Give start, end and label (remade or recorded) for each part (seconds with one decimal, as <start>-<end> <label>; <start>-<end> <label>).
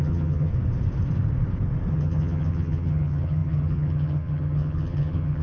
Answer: 0.0-0.5 remade; 0.5-1.9 recorded; 1.9-5.4 remade